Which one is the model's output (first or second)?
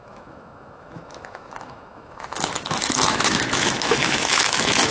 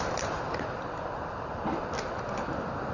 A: first